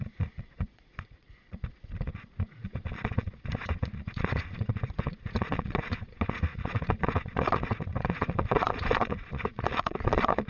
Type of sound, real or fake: fake